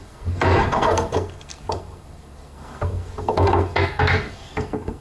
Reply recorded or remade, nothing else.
remade